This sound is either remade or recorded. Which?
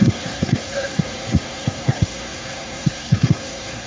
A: remade